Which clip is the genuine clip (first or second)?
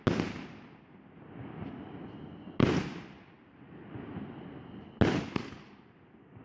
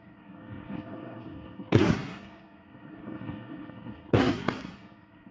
first